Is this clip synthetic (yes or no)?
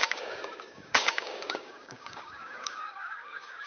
yes